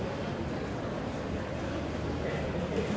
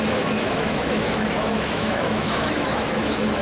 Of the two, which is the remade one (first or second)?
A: second